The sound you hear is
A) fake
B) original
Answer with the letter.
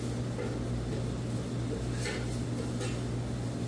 B